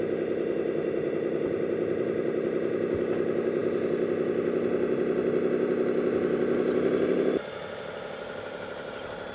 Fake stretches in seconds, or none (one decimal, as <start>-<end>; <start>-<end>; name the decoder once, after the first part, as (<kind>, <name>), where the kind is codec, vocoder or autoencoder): none